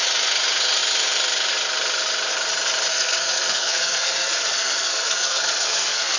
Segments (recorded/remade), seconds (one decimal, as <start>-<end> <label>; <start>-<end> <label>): 0.0-2.9 recorded; 2.9-6.2 remade